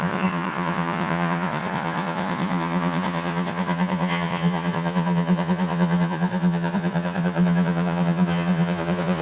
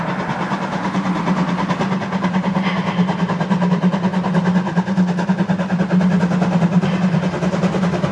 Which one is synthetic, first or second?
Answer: first